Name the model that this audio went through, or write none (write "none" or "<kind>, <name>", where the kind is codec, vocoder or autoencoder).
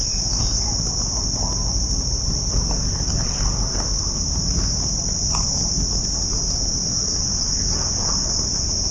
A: none